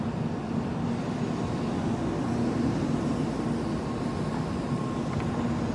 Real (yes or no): yes